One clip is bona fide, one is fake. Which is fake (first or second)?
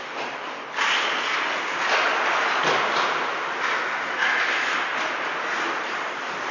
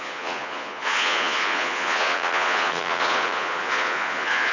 second